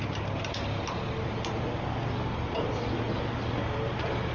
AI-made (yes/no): no